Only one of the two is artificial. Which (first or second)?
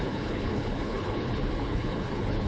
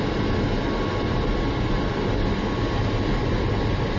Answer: first